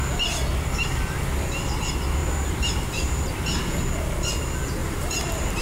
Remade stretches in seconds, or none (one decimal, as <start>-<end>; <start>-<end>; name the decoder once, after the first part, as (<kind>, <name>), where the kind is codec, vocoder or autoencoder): 2.2-3.7 (vocoder, BigVGAN v2); 4.8-5.6